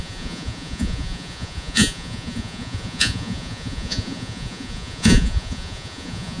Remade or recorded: remade